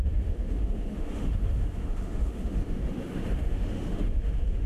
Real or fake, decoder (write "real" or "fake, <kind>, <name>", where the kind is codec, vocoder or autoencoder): fake, autoencoder, DAC-VAE